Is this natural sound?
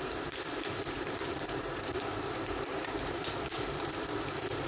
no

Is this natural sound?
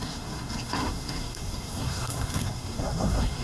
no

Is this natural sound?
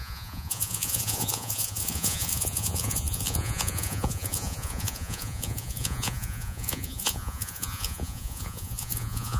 no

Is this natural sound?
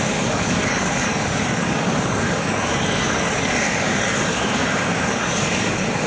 no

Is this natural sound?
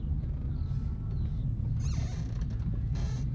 yes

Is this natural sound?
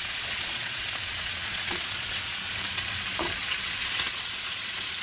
no